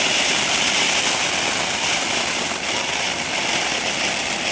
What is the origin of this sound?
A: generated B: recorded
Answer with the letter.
B